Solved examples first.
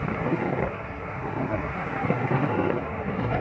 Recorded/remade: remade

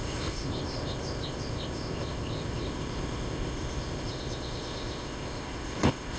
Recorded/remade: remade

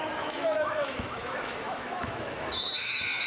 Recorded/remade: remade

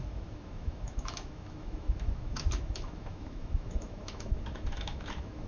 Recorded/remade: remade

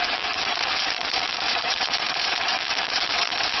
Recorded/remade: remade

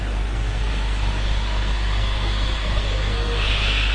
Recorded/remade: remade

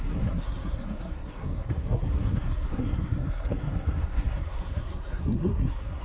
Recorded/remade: remade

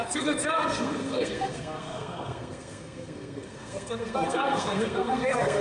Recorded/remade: remade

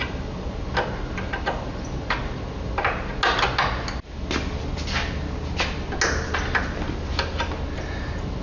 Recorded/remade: recorded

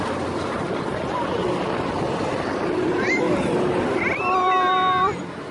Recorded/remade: recorded